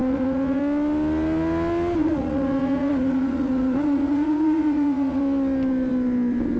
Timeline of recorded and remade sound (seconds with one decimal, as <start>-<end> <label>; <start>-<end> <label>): 0.0-0.6 remade; 0.6-2.0 recorded; 2.0-5.2 remade; 5.2-6.6 recorded